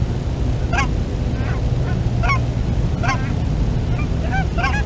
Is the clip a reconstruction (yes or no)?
no